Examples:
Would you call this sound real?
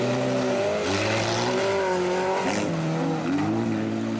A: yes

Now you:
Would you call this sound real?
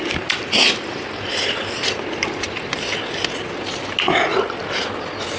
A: yes